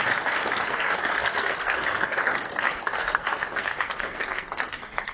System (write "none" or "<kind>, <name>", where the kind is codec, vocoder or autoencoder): codec, SNAC